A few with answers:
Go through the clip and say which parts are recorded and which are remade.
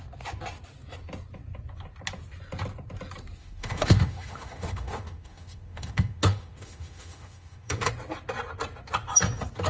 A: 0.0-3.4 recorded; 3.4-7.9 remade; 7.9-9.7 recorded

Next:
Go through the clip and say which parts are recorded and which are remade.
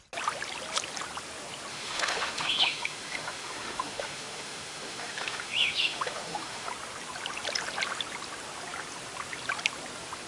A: 0.0-1.7 recorded; 1.7-6.7 remade; 6.7-10.3 recorded